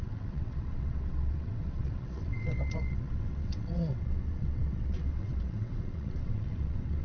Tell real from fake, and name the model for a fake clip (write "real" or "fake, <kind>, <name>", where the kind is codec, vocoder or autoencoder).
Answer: fake, vocoder, WaveNeXt